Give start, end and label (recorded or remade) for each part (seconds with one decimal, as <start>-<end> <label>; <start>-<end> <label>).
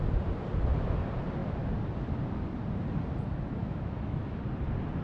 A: 0.0-3.6 recorded; 3.6-4.4 remade; 4.4-5.0 recorded